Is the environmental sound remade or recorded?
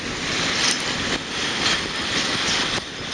recorded